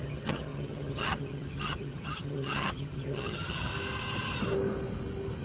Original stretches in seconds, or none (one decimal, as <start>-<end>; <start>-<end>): 3.7-5.4